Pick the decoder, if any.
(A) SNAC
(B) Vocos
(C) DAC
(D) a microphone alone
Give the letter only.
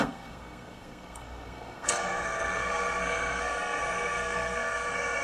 A